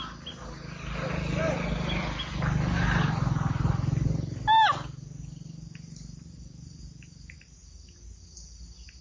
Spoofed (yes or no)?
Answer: no